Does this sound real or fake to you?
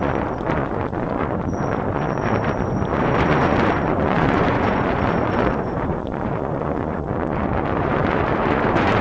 fake